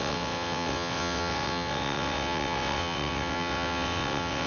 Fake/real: fake